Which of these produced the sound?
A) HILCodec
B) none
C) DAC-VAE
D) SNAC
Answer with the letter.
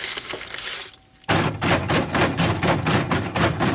B